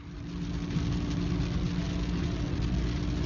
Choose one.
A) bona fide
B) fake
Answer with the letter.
A